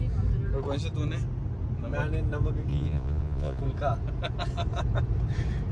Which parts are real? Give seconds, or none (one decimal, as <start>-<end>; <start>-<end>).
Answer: 0.0-2.7; 3.6-5.7